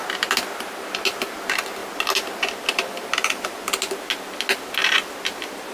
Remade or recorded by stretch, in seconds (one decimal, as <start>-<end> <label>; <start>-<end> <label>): 0.0-5.7 recorded